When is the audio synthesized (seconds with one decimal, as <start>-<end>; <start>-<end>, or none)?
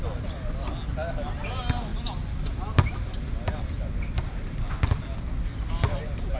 none